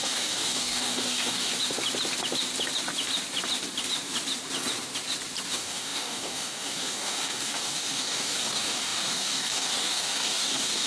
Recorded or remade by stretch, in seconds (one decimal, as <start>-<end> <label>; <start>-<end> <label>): 0.0-1.5 remade; 1.5-5.5 recorded; 5.5-10.9 remade

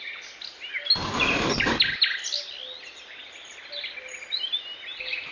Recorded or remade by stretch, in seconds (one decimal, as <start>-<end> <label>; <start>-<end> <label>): 0.0-5.3 recorded

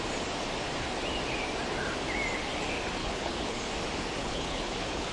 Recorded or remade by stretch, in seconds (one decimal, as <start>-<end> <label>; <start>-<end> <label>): 0.0-3.0 recorded; 3.0-3.7 remade; 3.7-4.2 recorded; 4.2-5.1 remade

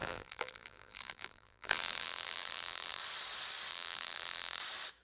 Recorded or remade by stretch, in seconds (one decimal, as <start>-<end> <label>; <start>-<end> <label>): 0.0-3.0 remade; 3.0-3.7 recorded; 3.7-4.6 remade; 4.6-5.0 recorded

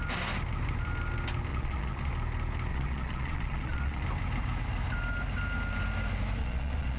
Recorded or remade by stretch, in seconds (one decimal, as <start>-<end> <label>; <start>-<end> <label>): 0.0-1.5 recorded; 1.5-2.1 remade; 2.1-2.7 recorded; 2.7-4.0 remade; 4.0-6.4 recorded; 6.4-7.0 remade

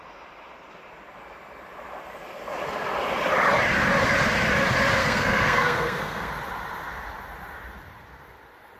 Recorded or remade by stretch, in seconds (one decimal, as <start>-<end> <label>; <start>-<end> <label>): 0.0-5.0 recorded; 5.0-6.3 remade; 6.3-8.8 recorded

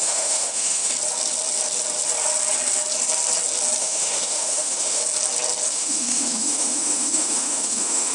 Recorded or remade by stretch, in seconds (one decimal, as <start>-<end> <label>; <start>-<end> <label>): 0.0-0.9 remade; 0.9-3.8 recorded; 3.8-5.0 remade; 5.0-5.7 recorded; 5.7-8.1 remade